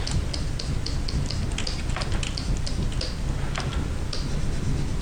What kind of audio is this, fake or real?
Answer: real